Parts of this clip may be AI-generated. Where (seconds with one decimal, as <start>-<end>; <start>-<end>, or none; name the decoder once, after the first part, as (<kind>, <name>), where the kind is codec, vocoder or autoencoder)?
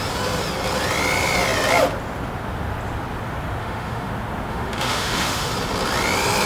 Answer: 3.6-4.1 (autoencoder, DAC-VAE); 4.5-5.5